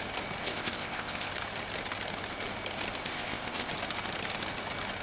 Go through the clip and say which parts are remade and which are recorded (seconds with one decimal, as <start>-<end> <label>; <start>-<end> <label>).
0.0-0.4 recorded; 0.4-1.3 remade; 1.3-3.0 recorded; 3.0-3.7 remade; 3.7-5.0 recorded